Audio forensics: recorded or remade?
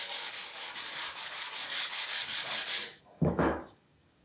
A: remade